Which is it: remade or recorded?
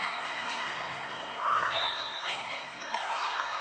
remade